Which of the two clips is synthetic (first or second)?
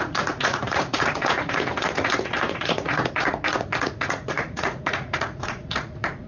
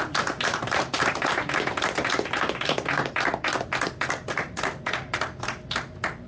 first